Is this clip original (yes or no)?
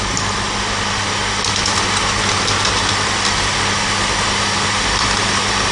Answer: yes